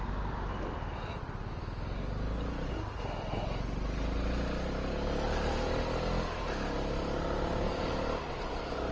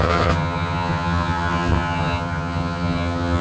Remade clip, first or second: second